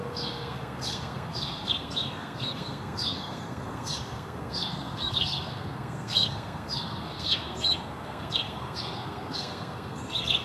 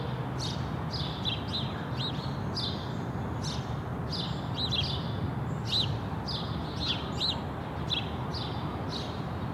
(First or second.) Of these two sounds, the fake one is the first